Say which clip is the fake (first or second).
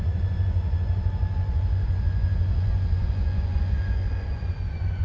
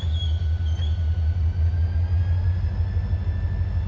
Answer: first